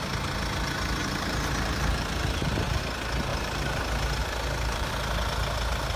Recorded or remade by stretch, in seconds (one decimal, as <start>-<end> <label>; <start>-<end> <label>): 0.0-1.0 recorded; 1.0-2.8 remade; 2.8-3.3 recorded; 3.3-3.8 remade; 3.8-4.2 recorded; 4.2-4.9 remade; 4.9-6.0 recorded